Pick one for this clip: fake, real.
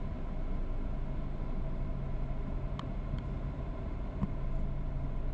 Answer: real